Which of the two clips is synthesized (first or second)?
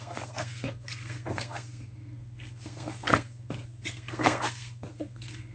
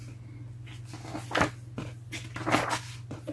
first